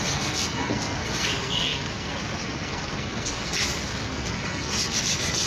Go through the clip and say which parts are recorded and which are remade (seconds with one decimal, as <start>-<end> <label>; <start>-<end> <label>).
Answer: 0.0-5.5 remade